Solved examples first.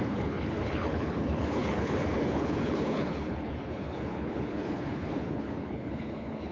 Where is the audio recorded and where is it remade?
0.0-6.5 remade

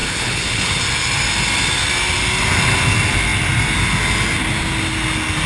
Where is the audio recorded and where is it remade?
0.0-0.8 remade; 0.8-5.5 recorded

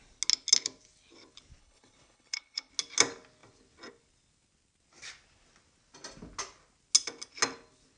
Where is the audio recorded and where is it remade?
0.0-1.6 recorded; 1.6-2.7 remade; 2.7-8.0 recorded

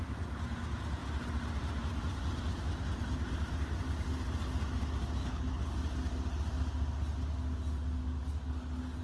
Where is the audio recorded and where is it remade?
0.0-5.2 recorded; 5.2-5.7 remade; 5.7-9.0 recorded

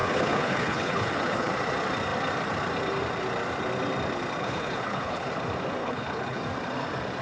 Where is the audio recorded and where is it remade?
0.0-1.5 remade; 1.5-4.4 recorded; 4.4-5.3 remade; 5.3-5.8 recorded; 5.8-6.4 remade; 6.4-7.2 recorded